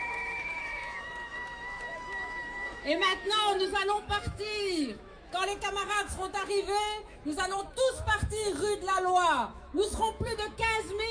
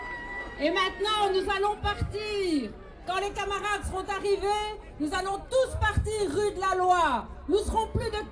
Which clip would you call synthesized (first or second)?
first